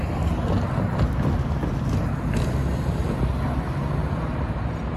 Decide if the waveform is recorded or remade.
recorded